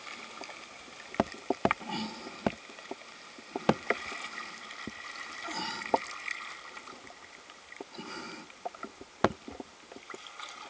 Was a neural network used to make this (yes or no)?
no